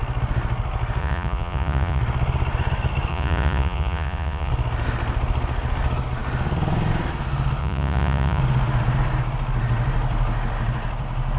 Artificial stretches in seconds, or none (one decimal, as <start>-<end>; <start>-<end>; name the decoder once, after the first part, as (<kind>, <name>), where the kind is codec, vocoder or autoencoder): 1.0-2.0 (vocoder, Vocos); 3.1-4.5; 7.6-8.4